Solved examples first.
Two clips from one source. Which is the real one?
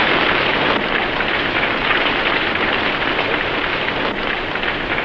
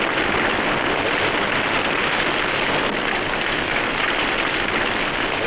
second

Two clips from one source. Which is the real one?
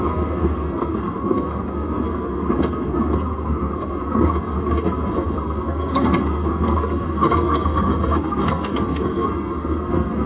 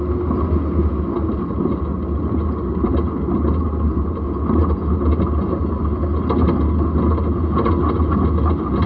second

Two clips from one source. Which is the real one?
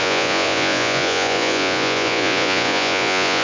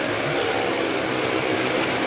second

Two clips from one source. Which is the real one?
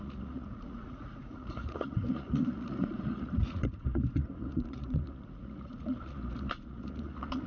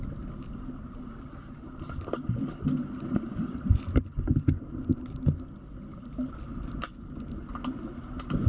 second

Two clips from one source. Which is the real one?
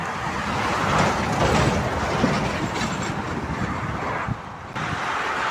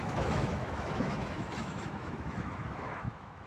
first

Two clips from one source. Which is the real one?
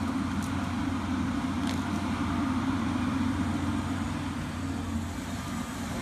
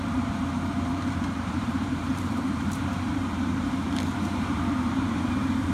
first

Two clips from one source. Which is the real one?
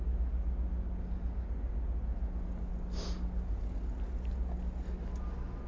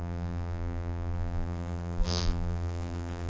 first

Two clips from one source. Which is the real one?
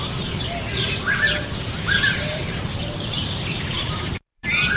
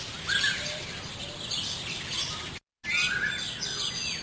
second